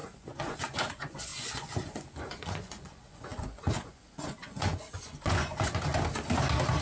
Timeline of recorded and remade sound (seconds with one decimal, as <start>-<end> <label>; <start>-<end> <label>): 0.0-5.9 remade; 5.9-6.8 recorded